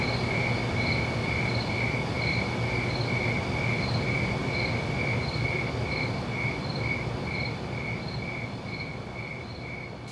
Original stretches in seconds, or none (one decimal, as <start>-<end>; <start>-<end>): 0.0-10.1